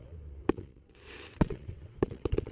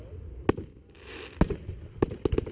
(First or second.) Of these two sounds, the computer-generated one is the first